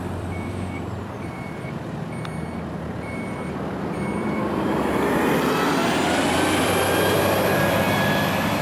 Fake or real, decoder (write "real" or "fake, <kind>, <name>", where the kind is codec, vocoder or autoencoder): fake, vocoder, BigVGAN v2